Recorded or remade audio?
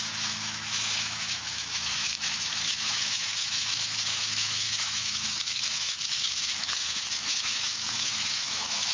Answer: remade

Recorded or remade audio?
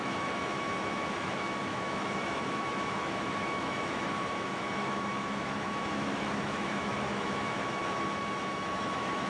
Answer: remade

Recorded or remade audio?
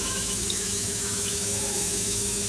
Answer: remade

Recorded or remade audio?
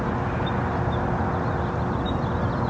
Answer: recorded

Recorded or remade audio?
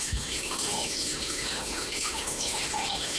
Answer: remade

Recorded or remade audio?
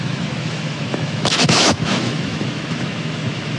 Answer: remade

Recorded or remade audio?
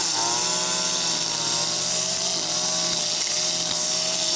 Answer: recorded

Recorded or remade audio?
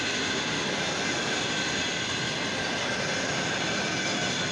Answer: recorded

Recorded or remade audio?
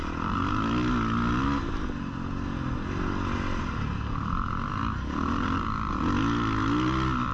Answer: recorded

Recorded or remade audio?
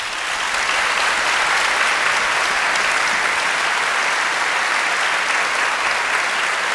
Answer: recorded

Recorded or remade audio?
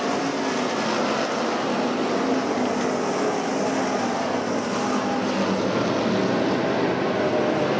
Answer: recorded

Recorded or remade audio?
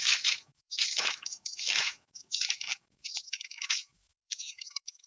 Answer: remade